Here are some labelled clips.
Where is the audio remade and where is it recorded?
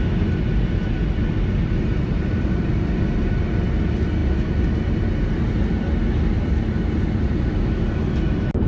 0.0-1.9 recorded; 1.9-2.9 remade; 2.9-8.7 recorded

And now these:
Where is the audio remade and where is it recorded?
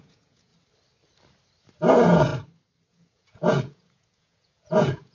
0.0-0.5 remade; 0.5-1.9 recorded; 1.9-2.3 remade; 2.3-2.9 recorded; 2.9-5.1 remade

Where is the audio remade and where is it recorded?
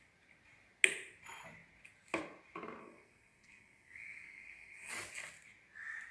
0.0-2.8 recorded; 2.8-4.9 remade; 4.9-6.1 recorded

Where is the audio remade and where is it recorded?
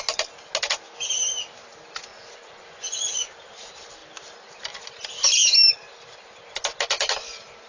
0.0-2.1 recorded; 2.1-3.3 remade; 3.3-7.7 recorded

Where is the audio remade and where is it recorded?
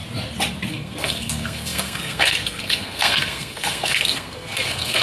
0.0-0.7 recorded; 0.7-5.0 remade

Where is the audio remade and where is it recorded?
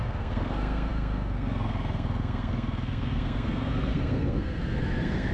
0.0-5.3 remade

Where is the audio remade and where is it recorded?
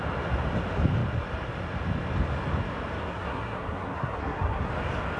0.0-3.1 recorded; 3.1-4.7 remade; 4.7-5.2 recorded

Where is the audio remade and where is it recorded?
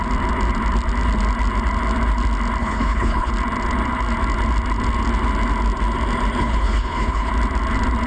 0.0-2.6 recorded; 2.6-3.3 remade; 3.3-6.4 recorded; 6.4-7.3 remade; 7.3-8.1 recorded